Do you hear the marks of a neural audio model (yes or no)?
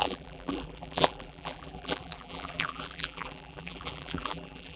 yes